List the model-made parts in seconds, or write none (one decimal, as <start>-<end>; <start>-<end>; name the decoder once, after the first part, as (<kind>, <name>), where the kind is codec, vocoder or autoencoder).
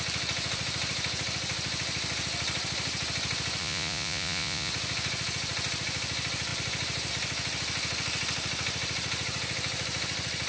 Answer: 3.6-4.7 (vocoder, Vocos)